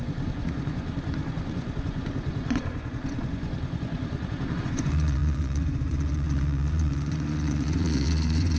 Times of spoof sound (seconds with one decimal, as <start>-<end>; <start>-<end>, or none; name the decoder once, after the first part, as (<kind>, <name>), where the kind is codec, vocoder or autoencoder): 0.0-8.6 (vocoder, Vocos)